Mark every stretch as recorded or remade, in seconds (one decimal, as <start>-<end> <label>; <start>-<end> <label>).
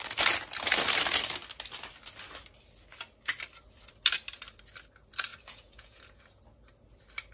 0.0-5.3 recorded; 5.3-6.2 remade; 6.2-7.3 recorded